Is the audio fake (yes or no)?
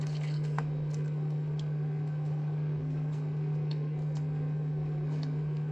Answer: yes